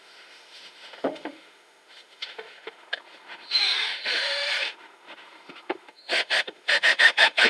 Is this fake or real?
fake